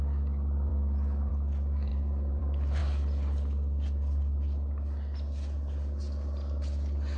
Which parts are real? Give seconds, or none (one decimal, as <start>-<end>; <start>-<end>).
0.0-1.9; 2.4-7.2